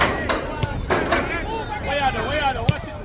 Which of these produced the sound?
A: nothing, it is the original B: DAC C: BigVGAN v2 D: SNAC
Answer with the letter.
A